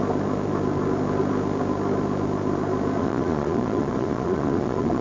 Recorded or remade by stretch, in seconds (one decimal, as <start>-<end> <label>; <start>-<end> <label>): 0.0-3.0 recorded; 3.0-5.0 remade